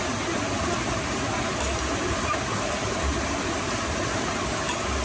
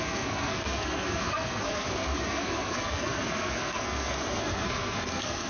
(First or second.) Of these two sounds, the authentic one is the first